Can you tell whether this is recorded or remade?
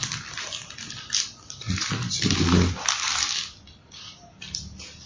recorded